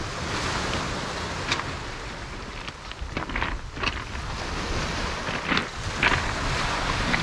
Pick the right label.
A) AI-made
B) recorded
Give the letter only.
B